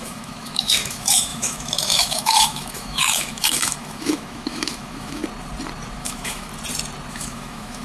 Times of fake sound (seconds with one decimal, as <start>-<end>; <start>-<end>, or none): 0.0-5.2; 6.0-6.5; 7.1-7.8